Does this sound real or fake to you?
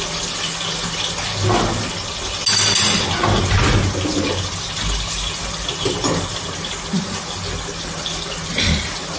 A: real